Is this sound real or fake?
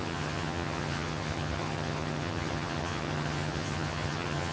fake